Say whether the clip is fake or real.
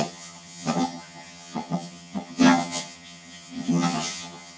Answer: fake